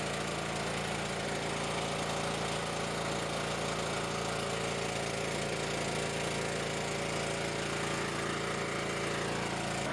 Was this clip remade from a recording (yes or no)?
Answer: no